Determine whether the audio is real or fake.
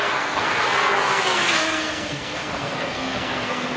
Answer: fake